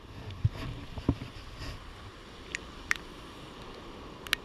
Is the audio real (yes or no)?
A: yes